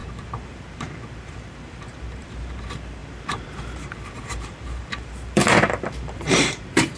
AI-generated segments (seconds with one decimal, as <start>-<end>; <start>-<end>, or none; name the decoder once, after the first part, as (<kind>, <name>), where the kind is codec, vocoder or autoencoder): 0.0-7.0 (vocoder, BigVGAN v2)